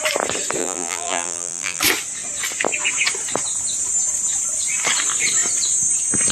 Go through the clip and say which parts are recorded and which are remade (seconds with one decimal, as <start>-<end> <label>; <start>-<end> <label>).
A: 0.0-0.6 recorded; 0.6-1.8 remade; 1.8-6.3 recorded